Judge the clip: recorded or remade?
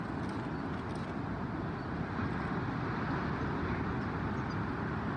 recorded